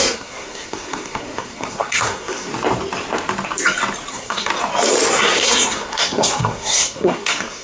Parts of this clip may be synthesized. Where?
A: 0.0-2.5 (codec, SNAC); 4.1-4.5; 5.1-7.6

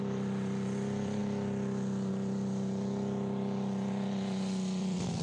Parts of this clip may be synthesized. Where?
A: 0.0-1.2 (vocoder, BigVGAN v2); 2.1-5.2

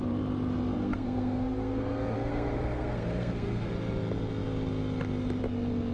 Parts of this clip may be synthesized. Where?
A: 0.7-3.7 (codec, SNAC)

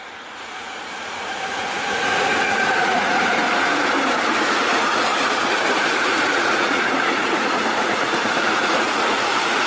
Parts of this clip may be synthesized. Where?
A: 0.0-3.4 (vocoder, Vocos); 4.5-9.7

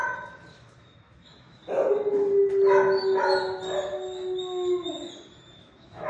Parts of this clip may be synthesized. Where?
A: 0.5-1.6 (autoencoder, DAC-VAE); 5.3-6.1